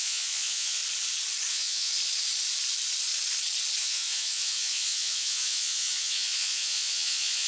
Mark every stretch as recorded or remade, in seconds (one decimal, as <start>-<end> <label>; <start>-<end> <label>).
0.0-0.8 remade; 0.8-1.5 recorded; 1.5-1.9 remade; 1.9-3.8 recorded; 3.8-7.5 remade